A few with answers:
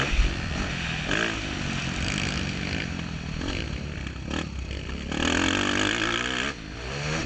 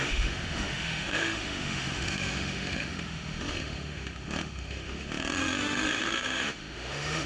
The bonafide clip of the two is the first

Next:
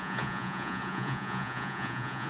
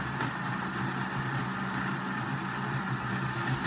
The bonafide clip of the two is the second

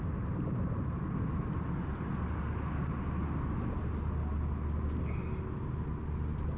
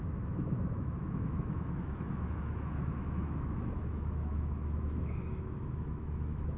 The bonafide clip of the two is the first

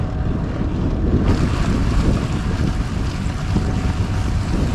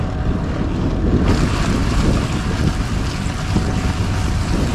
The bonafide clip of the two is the second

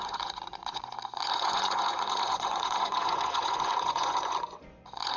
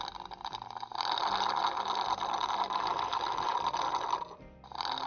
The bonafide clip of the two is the second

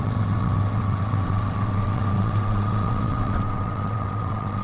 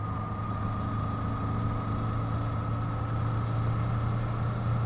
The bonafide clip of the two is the second